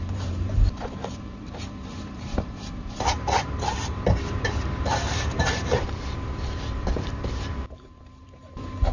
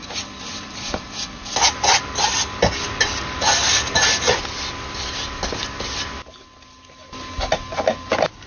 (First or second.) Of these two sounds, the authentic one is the second